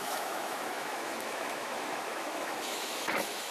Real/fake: fake